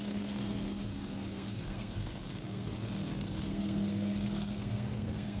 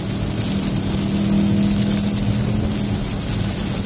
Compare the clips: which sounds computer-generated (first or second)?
first